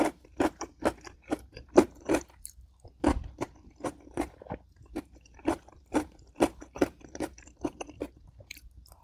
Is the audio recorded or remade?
remade